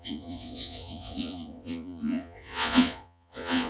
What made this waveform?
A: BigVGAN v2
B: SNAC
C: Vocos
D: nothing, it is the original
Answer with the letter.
C